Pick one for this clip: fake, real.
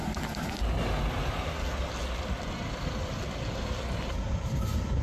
real